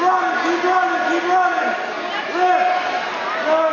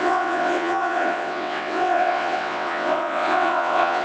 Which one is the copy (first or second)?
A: second